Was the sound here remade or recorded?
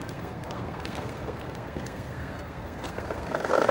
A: remade